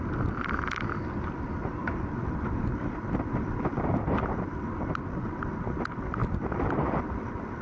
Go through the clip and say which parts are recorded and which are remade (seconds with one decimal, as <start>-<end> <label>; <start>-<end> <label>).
0.0-6.2 remade; 6.2-6.7 recorded; 6.7-7.6 remade